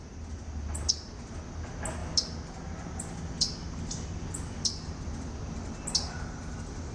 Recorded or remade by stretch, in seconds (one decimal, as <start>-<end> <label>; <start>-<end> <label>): 0.0-6.9 recorded